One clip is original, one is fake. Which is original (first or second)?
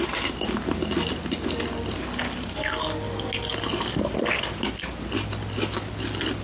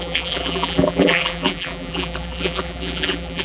first